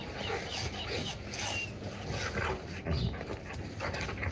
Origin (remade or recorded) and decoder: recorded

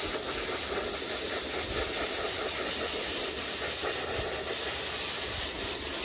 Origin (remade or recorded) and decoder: recorded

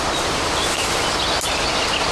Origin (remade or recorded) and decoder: recorded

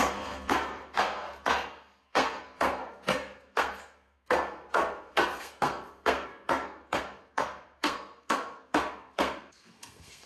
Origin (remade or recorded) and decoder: remade, codec, SNAC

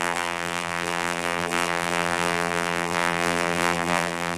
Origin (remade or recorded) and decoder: remade, vocoder, BigVGAN v2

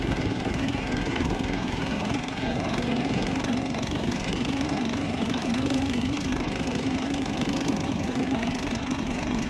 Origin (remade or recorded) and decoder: remade, codec, SNAC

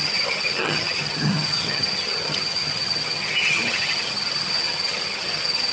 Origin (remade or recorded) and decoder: remade, vocoder, HiFi-GAN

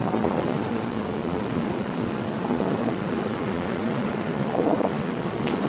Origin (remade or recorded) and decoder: remade, vocoder, Vocos